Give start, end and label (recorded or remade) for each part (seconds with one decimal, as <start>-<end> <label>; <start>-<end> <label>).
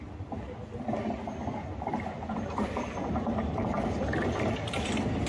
0.0-1.9 recorded; 1.9-5.3 remade